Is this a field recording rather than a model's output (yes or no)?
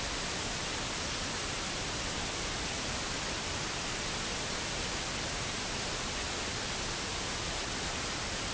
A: yes